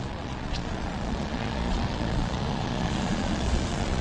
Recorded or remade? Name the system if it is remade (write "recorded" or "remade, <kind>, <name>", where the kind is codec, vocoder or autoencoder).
remade, vocoder, Vocos